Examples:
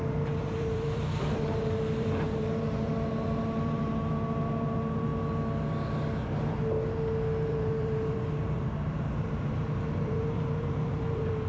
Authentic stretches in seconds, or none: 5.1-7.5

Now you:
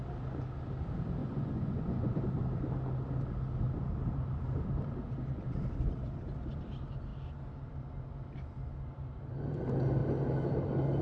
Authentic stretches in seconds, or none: 0.0-1.2; 2.2-11.0